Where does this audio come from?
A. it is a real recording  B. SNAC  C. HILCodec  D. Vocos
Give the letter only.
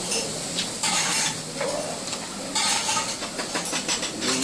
A